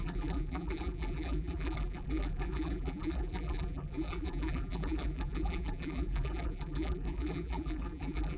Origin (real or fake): fake